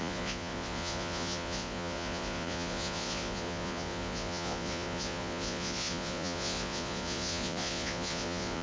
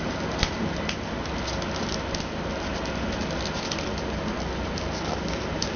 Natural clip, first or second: second